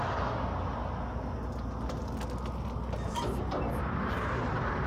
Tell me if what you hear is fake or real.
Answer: real